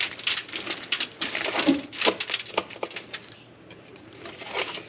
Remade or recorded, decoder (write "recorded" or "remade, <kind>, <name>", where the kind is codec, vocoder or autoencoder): recorded